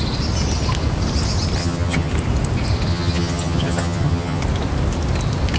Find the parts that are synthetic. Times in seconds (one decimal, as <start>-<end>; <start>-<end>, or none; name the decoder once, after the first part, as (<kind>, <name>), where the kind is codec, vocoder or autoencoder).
1.6-2.1 (vocoder, HiFi-GAN); 2.9-4.4